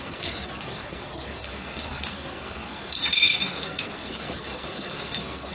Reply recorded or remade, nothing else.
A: remade